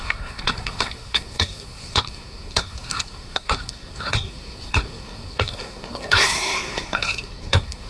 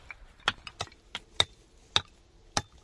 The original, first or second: second